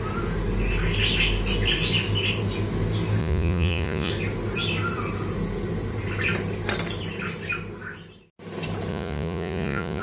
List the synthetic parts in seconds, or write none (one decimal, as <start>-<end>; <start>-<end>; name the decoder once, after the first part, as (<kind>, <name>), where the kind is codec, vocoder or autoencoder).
3.2-4.1 (vocoder, Vocos); 8.9-10.0